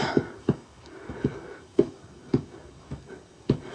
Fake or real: fake